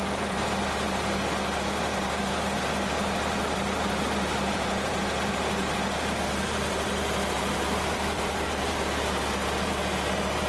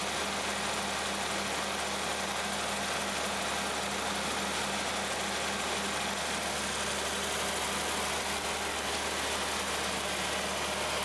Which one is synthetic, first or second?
first